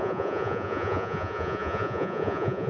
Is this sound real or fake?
fake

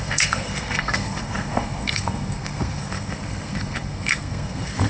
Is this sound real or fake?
fake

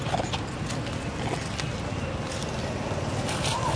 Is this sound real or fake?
real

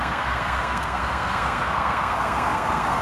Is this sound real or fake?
fake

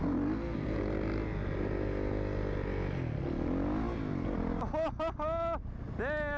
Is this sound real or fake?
real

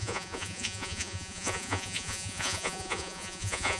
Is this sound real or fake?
fake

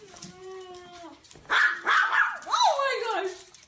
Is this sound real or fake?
fake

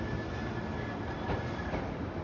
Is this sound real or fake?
real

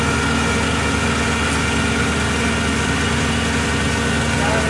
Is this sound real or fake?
real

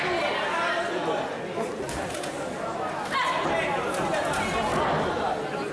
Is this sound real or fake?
real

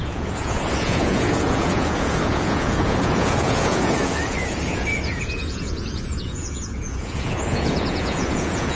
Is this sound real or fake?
fake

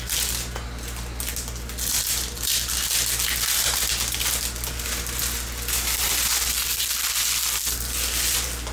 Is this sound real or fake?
real